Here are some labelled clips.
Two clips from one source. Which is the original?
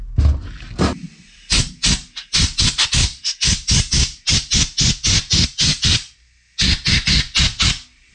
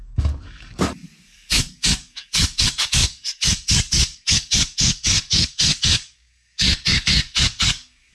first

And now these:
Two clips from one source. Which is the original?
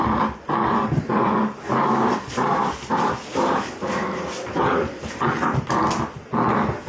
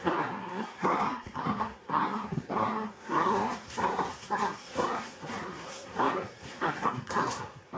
first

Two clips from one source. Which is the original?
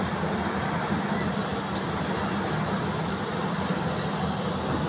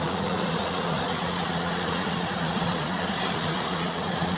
first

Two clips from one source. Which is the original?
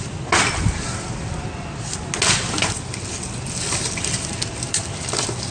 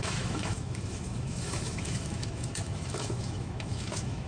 first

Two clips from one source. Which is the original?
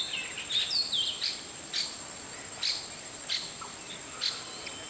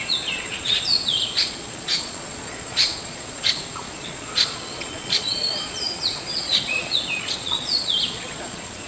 first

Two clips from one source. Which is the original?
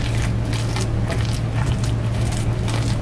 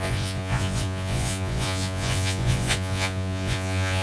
first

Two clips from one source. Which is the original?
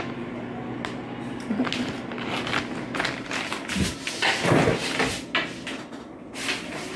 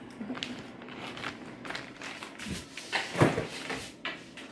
first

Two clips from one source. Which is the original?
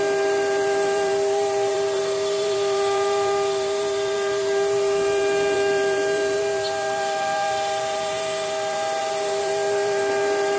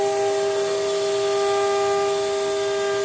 second